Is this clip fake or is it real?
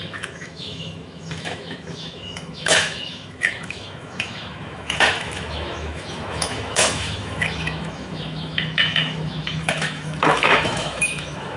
fake